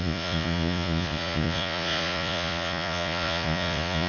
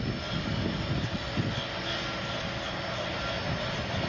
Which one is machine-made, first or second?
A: first